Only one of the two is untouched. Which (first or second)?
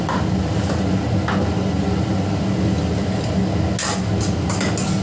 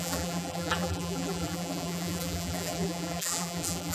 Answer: first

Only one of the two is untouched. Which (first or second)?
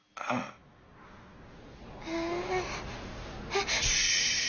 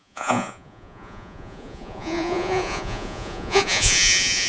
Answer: first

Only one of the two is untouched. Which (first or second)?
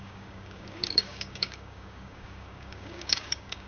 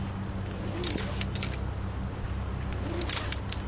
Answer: second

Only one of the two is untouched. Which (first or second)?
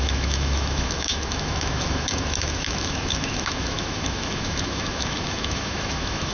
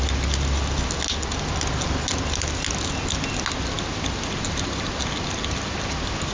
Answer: second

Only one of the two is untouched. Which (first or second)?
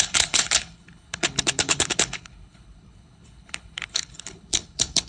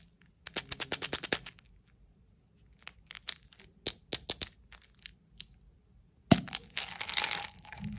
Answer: second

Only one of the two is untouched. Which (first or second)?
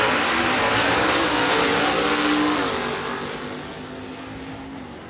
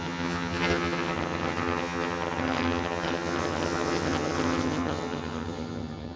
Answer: first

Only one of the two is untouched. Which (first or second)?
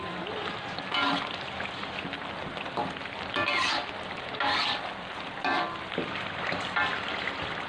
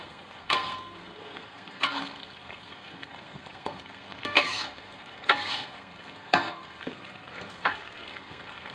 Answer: first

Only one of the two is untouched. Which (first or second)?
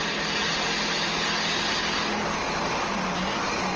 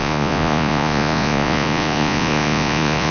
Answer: first